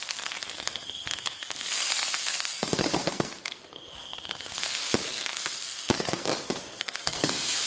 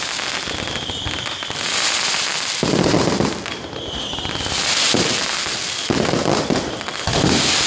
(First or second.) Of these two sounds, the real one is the second